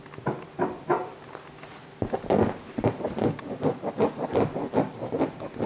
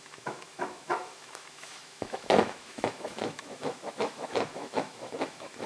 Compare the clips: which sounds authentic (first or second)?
first